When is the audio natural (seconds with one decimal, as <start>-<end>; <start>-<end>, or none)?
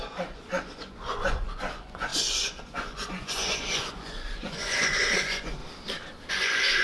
5.6-6.3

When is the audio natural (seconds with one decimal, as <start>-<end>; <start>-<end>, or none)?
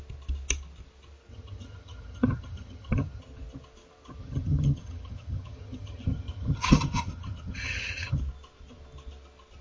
0.0-1.3; 3.2-4.2; 8.2-9.6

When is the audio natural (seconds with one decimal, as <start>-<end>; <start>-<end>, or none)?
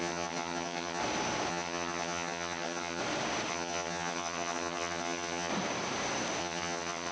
1.0-1.5; 3.0-3.5; 5.5-6.4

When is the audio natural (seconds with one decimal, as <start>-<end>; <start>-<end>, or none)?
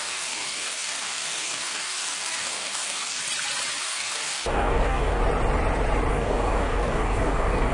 3.2-3.8; 5.2-6.1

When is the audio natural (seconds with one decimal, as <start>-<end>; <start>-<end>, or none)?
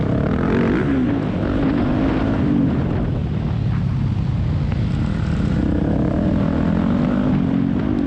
0.0-8.1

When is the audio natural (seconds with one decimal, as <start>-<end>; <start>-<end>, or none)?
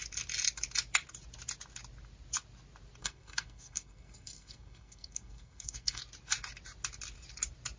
0.0-3.0; 6.0-7.8